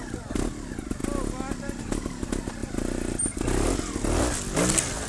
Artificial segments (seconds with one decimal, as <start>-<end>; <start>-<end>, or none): none